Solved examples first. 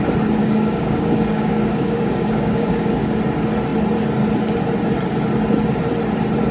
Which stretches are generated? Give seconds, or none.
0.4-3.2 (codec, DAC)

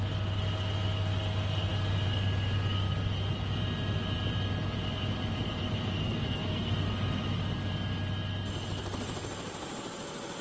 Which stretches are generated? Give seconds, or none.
6.0-6.7 (codec, SNAC)

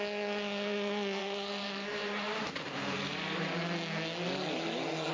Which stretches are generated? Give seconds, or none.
1.2-3.5 (vocoder, BigVGAN v2)

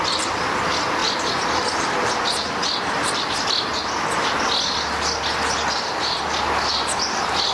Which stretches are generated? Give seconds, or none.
none

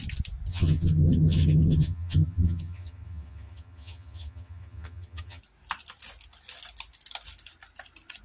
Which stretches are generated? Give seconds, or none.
0.5-5.4 (vocoder, HiFi-GAN)

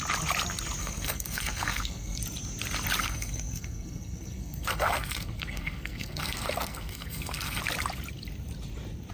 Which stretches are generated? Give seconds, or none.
0.8-2.2 (codec, SNAC); 3.0-7.6

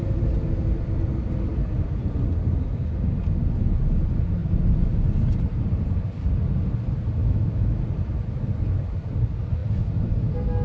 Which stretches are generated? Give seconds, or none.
7.2-7.8 (autoencoder, DAC-VAE)

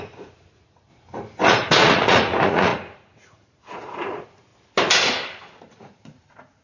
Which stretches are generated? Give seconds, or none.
0.0-0.9 (vocoder, Vocos); 1.5-4.5; 5.6-6.6